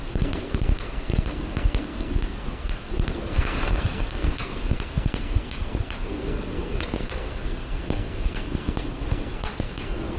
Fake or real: fake